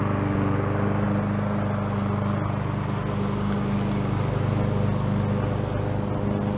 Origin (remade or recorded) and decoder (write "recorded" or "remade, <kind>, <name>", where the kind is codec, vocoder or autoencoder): recorded